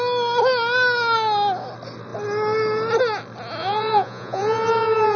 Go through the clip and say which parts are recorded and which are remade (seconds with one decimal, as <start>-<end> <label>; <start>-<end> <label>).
0.0-3.6 recorded; 3.6-5.2 remade